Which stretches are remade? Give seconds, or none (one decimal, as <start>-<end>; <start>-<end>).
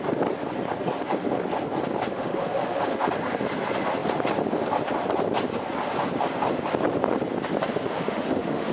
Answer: 2.1-3.0; 7.7-8.7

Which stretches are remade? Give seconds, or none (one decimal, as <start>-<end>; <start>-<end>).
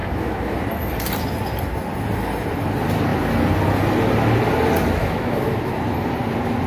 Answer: 0.0-0.6; 5.0-5.8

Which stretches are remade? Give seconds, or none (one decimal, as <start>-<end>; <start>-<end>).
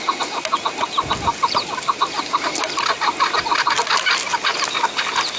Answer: none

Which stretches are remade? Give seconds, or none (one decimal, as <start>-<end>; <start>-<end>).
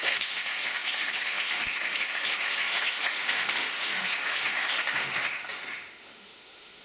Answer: 0.0-6.8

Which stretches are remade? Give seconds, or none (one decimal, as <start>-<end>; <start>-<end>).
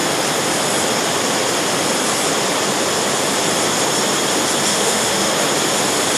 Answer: 4.7-5.3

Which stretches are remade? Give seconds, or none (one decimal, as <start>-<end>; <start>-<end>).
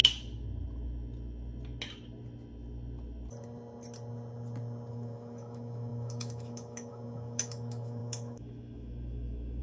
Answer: 4.9-9.6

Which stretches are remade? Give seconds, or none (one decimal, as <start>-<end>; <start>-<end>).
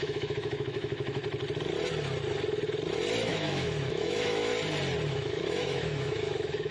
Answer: 0.0-1.2; 3.3-4.5; 5.1-6.7